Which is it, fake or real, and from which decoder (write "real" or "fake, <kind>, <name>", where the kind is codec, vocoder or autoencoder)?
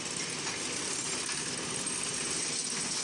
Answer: real